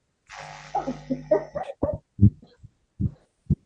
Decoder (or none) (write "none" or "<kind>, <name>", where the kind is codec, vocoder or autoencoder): none